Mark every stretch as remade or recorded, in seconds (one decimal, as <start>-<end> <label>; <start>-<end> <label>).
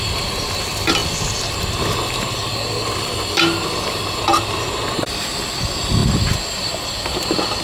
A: 0.0-7.6 recorded